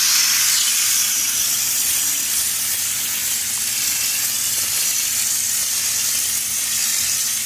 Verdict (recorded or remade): recorded